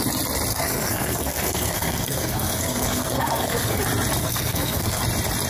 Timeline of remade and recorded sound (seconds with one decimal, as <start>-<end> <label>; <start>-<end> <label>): 0.0-0.5 recorded; 0.5-3.8 remade; 3.8-4.2 recorded; 4.2-5.0 remade; 5.0-5.5 recorded